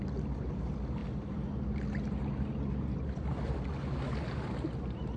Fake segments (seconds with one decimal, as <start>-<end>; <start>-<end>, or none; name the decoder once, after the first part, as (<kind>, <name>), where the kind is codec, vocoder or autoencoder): none